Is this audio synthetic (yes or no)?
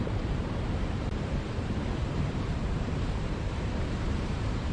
yes